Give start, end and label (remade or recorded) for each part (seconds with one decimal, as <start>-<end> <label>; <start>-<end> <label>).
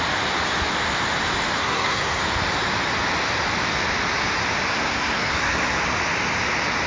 0.0-1.6 recorded; 1.6-2.2 remade; 2.2-4.7 recorded; 4.7-5.8 remade; 5.8-6.9 recorded